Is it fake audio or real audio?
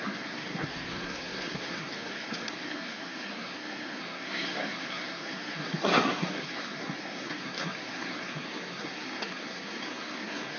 fake